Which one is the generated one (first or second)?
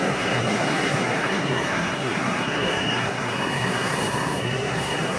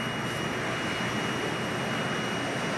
first